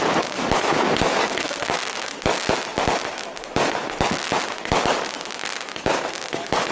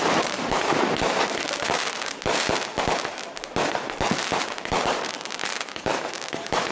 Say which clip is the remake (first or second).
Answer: second